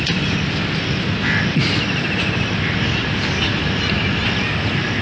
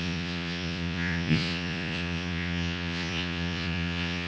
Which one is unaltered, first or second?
first